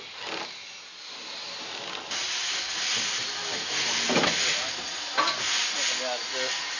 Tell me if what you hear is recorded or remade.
recorded